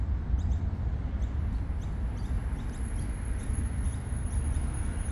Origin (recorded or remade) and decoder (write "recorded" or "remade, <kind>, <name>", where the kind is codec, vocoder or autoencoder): recorded